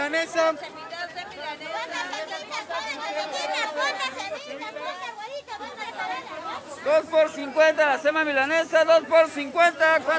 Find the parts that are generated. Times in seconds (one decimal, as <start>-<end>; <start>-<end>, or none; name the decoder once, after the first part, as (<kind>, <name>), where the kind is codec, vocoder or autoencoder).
none